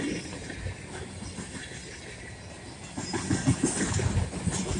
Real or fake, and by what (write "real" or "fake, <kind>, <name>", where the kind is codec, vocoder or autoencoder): real